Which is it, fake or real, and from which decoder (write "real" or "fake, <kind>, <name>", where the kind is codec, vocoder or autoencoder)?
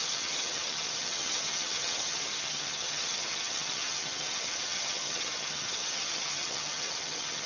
fake, vocoder, HiFi-GAN